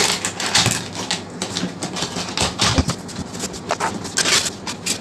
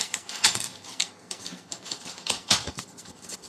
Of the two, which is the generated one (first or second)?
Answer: second